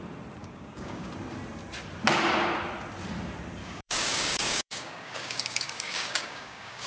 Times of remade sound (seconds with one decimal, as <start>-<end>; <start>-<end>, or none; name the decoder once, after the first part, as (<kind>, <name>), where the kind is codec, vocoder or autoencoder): 0.4-1.1 (codec, DAC); 3.6-6.9

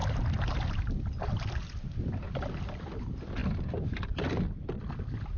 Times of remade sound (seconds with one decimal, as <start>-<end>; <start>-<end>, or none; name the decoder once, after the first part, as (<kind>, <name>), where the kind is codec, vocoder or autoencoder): none

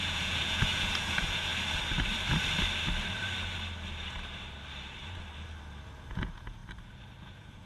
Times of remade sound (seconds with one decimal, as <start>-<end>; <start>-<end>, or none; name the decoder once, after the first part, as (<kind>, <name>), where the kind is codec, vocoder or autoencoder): 0.0-1.5 (vocoder, Vocos); 6.1-6.6; 7.2-7.7

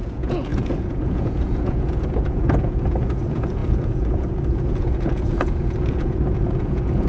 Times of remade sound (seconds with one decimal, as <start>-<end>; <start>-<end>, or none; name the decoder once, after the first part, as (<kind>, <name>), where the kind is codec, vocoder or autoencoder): 0.0-7.1 (vocoder, Vocos)